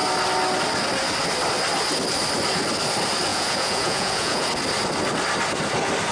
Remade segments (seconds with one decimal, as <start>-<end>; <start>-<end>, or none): 3.3-4.5